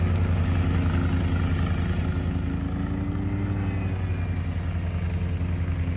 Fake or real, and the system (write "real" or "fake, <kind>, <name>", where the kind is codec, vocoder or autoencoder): real